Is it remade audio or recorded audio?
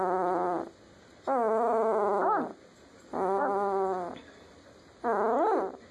recorded